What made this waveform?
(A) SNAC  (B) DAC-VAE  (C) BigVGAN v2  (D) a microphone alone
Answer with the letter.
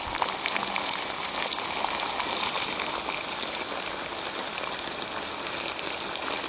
D